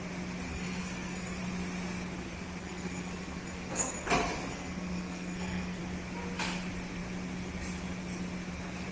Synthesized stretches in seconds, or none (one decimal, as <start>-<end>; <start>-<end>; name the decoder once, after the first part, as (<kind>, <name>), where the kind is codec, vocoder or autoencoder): 0.5-1.4 (codec, SNAC); 2.6-3.9; 4.4-5.8